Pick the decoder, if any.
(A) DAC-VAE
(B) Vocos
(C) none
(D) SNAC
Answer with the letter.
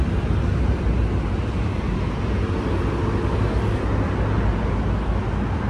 C